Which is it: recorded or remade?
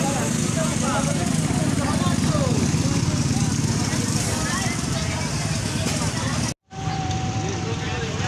recorded